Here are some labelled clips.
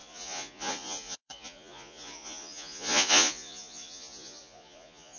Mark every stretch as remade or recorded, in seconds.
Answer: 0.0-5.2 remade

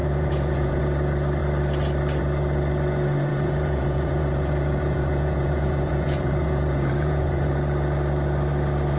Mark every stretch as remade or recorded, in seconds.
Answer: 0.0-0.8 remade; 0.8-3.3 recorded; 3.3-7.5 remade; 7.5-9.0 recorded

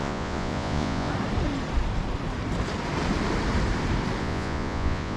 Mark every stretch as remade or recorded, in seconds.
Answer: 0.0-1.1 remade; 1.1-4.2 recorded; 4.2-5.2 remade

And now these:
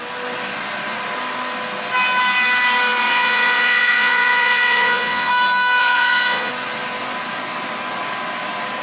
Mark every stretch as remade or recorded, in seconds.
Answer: 0.0-3.1 recorded; 3.1-5.3 remade; 5.3-5.8 recorded; 5.8-6.5 remade; 6.5-8.8 recorded

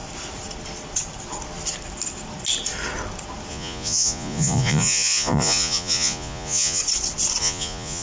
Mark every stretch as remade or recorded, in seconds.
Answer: 0.0-3.5 recorded; 3.5-6.8 remade; 6.8-7.4 recorded; 7.4-8.0 remade